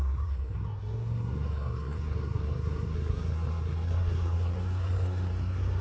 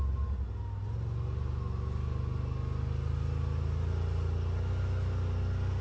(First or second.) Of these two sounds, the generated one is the first